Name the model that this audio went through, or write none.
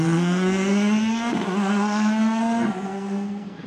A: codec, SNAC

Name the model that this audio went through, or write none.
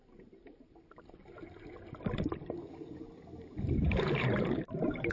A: vocoder, BigVGAN v2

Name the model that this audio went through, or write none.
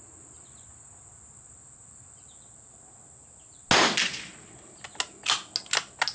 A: none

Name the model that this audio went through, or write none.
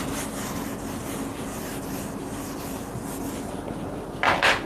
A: none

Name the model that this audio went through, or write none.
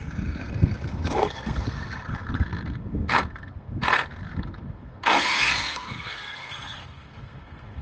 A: codec, SNAC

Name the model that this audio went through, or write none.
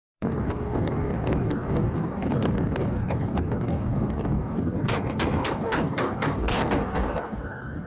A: codec, DAC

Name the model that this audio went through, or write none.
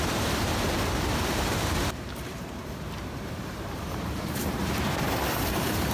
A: vocoder, BigVGAN v2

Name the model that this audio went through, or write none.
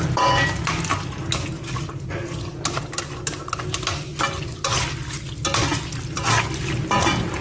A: none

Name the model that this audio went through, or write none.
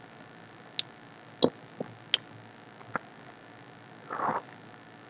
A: none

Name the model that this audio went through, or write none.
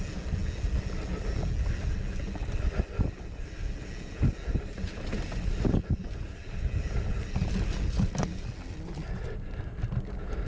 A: none